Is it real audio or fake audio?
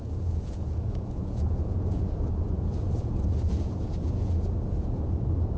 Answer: fake